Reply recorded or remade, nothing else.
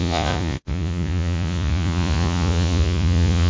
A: remade